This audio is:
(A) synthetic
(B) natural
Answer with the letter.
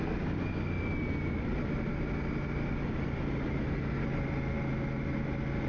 B